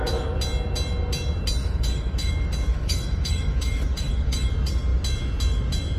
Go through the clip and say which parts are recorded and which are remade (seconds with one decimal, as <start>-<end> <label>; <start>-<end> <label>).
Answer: 0.0-1.6 recorded; 1.6-2.3 remade; 2.3-2.7 recorded; 2.7-4.5 remade; 4.5-6.0 recorded